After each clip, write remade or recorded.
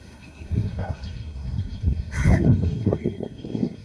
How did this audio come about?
remade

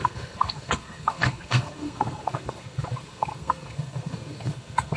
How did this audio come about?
remade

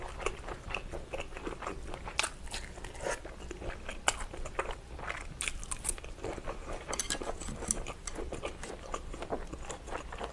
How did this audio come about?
recorded